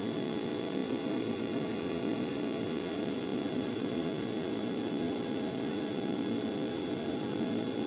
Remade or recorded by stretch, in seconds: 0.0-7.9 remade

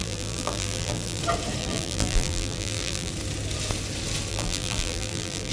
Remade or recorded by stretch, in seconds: 0.0-1.2 remade; 1.2-1.6 recorded; 1.6-3.1 remade; 3.1-4.3 recorded; 4.3-5.5 remade